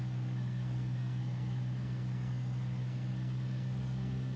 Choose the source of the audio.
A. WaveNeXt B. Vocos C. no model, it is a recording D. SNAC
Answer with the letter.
D